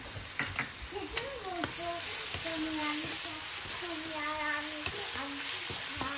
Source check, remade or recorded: recorded